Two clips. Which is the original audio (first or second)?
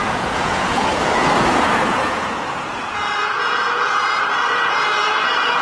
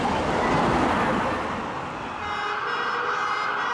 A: second